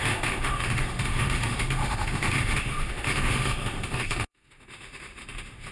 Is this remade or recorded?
remade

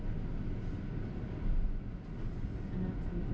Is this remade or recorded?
recorded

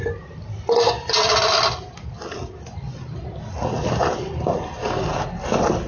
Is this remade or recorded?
recorded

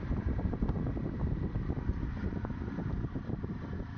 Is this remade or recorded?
recorded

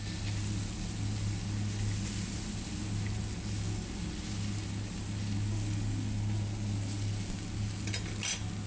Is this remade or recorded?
recorded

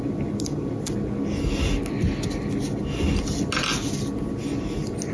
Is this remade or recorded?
recorded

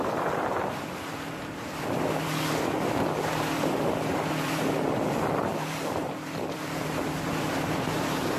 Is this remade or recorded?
remade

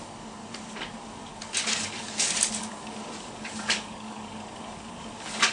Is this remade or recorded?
remade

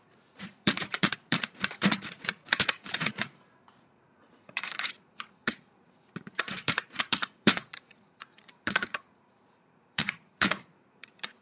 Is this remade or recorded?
remade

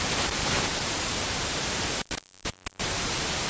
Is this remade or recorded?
remade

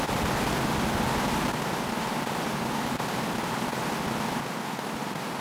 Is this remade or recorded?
recorded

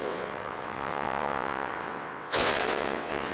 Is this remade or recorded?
remade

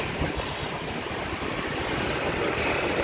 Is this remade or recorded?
recorded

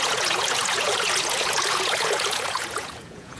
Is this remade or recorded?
remade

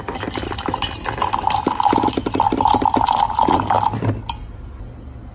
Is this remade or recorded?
recorded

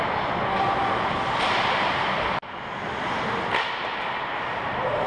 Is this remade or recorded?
recorded